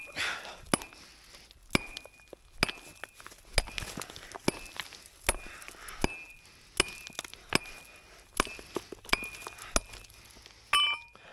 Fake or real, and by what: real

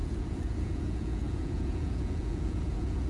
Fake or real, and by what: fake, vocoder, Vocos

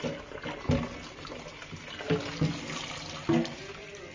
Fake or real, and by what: real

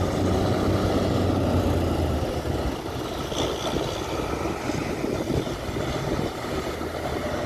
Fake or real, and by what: real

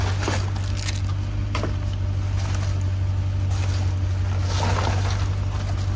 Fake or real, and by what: real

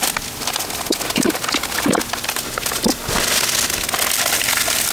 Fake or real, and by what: real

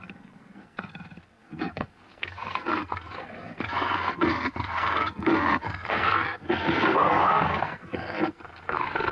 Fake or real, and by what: fake, codec, SNAC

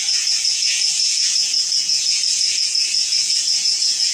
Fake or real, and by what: fake, vocoder, Vocos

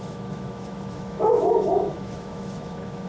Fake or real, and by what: fake, autoencoder, DAC-VAE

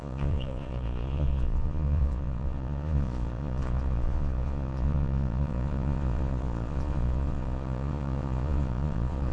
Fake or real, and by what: fake, vocoder, Vocos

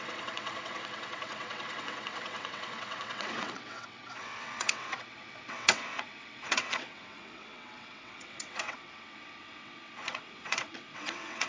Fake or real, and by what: fake, vocoder, WaveNeXt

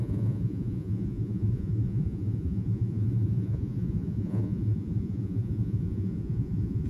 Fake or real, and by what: fake, vocoder, Vocos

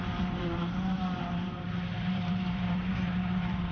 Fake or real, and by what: fake, vocoder, BigVGAN v2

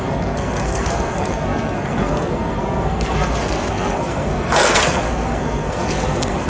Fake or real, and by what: fake, codec, SNAC